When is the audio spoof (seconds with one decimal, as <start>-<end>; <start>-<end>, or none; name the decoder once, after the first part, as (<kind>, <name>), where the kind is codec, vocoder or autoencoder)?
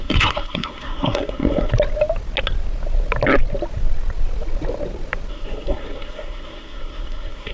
0.0-1.7 (codec, SNAC); 5.3-7.5